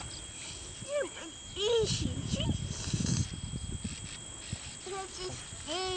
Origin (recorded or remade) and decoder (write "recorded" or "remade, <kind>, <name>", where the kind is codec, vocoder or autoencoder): recorded